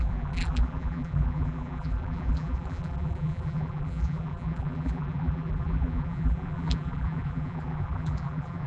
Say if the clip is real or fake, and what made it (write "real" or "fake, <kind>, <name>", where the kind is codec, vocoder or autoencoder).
fake, vocoder, BigVGAN v2